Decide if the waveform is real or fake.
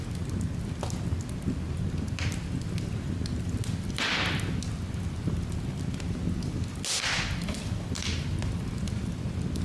real